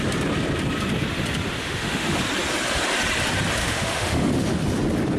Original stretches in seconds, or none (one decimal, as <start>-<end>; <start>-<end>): 0.0-1.6; 2.2-3.6; 4.3-5.2

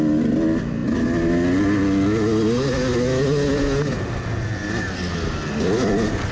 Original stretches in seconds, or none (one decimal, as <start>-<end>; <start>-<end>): 0.0-6.3